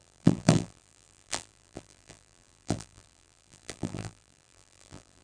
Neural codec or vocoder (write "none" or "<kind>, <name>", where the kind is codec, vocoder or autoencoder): vocoder, BigVGAN v2